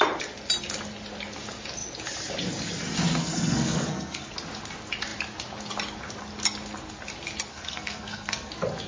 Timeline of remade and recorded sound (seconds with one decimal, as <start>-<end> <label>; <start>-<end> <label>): 0.0-3.2 recorded; 3.2-4.3 remade; 4.3-7.5 recorded; 7.5-8.5 remade; 8.5-8.9 recorded